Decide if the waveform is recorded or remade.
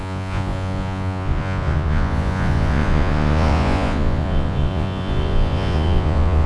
remade